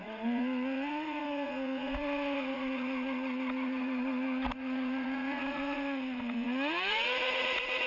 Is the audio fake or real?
fake